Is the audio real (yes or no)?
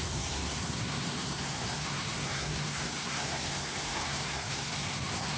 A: no